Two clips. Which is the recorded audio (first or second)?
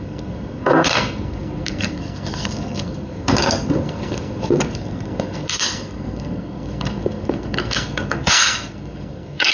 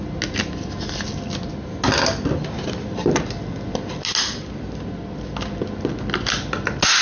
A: second